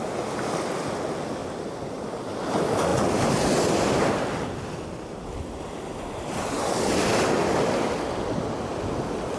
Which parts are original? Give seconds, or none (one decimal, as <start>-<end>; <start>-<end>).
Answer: 0.0-1.4; 2.1-9.4